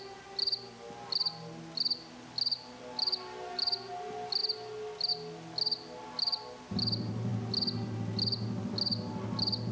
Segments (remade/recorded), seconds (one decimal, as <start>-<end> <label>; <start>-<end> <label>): 0.0-9.7 recorded